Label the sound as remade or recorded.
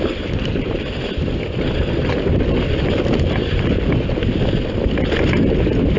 recorded